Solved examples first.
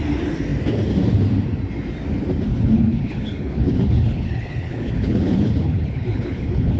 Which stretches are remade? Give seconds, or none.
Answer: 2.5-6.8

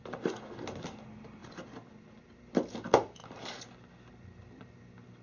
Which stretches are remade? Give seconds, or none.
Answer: none